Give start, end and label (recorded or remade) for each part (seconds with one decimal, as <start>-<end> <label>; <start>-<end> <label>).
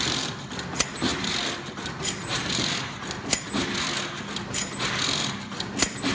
0.0-6.1 recorded